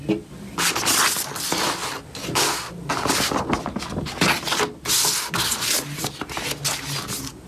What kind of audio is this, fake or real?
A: real